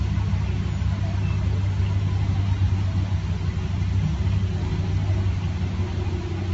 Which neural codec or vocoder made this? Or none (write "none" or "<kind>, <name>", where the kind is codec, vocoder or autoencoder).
none